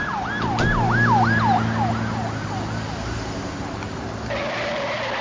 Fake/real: real